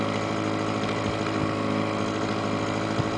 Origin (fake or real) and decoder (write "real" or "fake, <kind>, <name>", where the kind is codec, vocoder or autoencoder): real